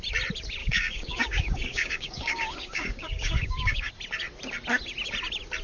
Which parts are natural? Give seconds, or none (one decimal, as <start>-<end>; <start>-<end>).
0.0-0.6; 3.9-5.6